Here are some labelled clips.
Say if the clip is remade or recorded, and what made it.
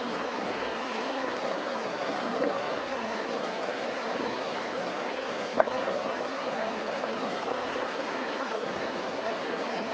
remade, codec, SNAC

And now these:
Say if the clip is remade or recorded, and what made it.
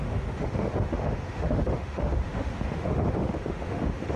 remade, autoencoder, DAC-VAE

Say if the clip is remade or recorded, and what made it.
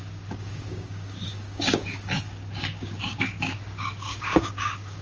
remade, codec, DAC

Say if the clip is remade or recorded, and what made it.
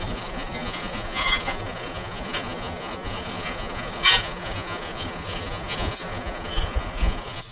remade, vocoder, Vocos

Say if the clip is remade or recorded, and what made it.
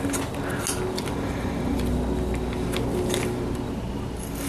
recorded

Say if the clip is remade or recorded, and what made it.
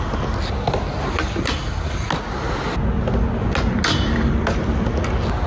recorded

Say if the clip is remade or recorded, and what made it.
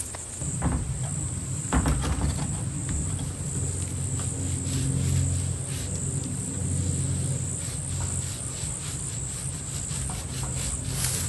recorded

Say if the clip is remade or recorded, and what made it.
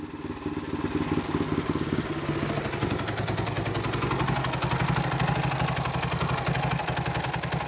recorded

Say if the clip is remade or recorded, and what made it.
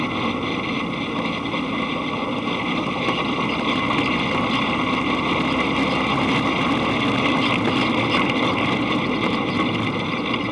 recorded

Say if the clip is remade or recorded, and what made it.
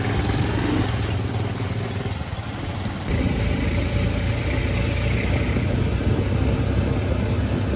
recorded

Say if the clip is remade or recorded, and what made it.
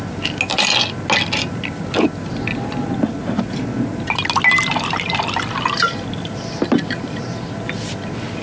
recorded